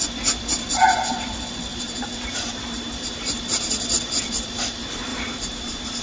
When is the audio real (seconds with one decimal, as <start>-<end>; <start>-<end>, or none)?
0.0-1.7; 3.7-5.1